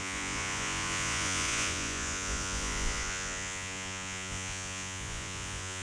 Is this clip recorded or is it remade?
remade